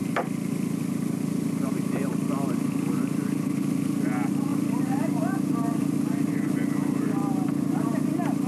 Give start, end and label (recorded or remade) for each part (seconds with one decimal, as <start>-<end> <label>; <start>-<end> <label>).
0.0-8.5 recorded